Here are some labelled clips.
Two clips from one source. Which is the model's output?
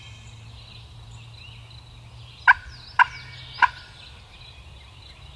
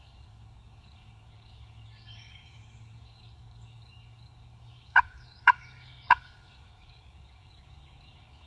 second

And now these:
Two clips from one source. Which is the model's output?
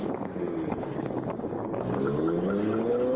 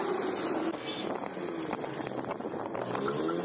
first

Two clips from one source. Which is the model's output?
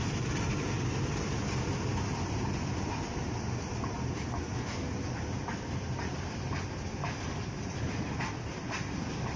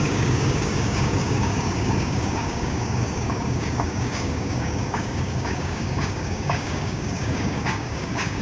second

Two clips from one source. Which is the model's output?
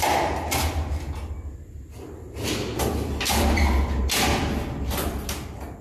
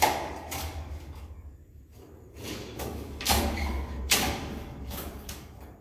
second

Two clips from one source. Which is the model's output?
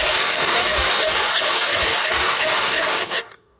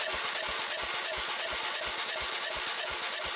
first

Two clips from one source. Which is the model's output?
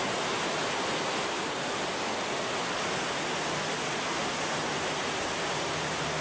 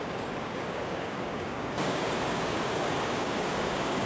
second